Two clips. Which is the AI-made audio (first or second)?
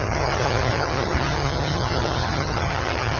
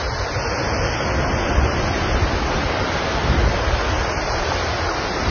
first